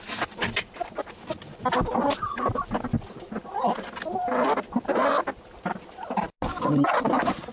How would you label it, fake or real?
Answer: real